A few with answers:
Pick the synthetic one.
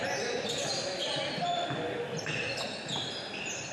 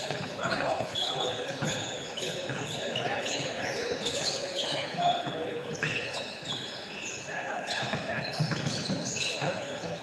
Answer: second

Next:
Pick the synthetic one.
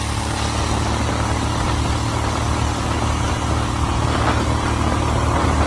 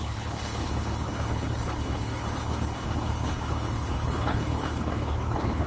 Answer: second